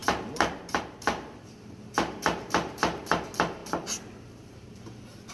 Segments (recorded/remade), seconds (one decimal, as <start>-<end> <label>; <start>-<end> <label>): 0.0-3.2 remade; 3.2-3.6 recorded; 3.6-5.3 remade